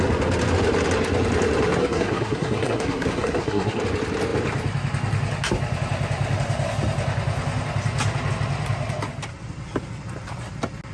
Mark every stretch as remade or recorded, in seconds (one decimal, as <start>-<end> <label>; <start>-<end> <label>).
0.0-1.8 recorded; 1.8-3.8 remade; 3.8-10.9 recorded